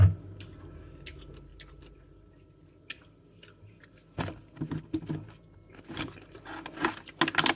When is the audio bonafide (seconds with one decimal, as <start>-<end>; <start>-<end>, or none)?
0.0-7.6